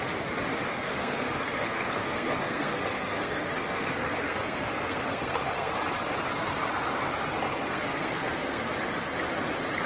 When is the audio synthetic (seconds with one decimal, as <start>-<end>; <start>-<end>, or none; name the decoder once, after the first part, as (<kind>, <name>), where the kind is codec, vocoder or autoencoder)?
0.7-5.7 (codec, SNAC); 7.7-8.6